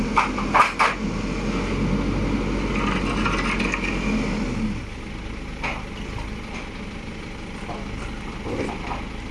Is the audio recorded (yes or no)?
yes